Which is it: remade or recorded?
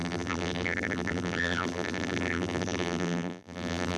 remade